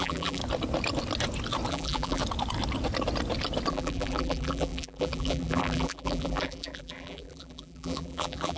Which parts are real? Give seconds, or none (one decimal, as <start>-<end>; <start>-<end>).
0.4-1.7; 2.2-3.7